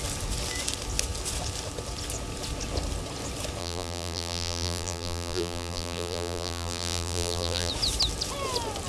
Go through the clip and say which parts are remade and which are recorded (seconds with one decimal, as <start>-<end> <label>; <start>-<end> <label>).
0.0-3.6 recorded; 3.6-7.7 remade; 7.7-8.9 recorded